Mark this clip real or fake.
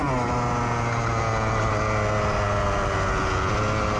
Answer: real